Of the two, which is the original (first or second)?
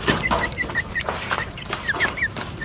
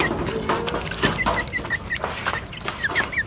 second